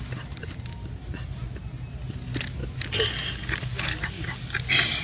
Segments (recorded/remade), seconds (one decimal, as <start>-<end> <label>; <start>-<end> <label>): 0.0-5.0 recorded